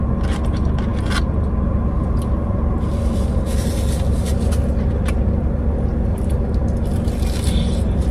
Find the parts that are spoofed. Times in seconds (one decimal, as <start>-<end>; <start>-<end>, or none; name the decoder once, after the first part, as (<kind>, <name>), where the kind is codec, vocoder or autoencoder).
none